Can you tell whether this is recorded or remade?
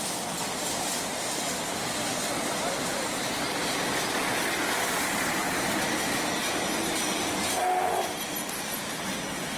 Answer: recorded